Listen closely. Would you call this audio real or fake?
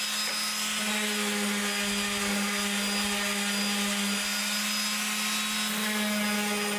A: real